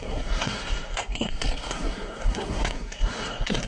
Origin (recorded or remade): remade